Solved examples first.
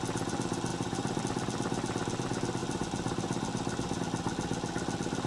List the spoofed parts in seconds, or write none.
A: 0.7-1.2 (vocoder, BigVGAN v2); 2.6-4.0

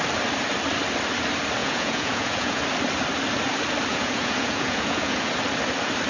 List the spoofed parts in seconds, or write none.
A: 1.6-2.6 (vocoder, Vocos); 3.9-5.3

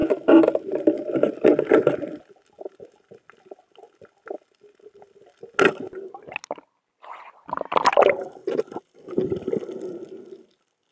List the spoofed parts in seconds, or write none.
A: 8.4-10.2 (vocoder, BigVGAN v2)

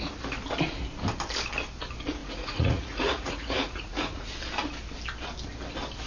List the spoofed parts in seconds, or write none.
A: 2.2-4.3 (vocoder, Vocos)

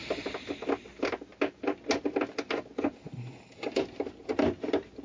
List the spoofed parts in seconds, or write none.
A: none

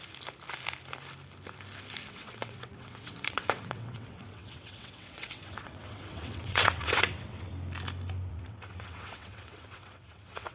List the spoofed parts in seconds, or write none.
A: 2.1-7.5 (vocoder, WaveNeXt); 8.3-10.5

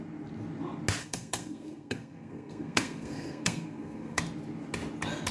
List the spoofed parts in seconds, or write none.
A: 1.0-4.2 (codec, SNAC)

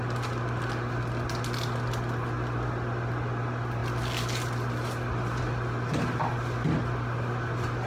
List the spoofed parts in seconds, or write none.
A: none